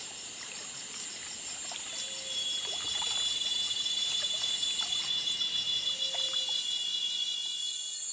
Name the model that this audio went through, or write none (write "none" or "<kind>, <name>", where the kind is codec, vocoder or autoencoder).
none